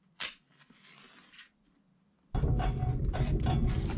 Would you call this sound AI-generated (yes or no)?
no